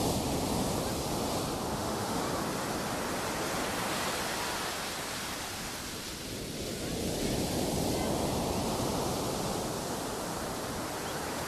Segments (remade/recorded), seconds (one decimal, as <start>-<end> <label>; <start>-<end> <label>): 0.0-1.7 recorded; 1.7-2.2 remade; 2.2-11.5 recorded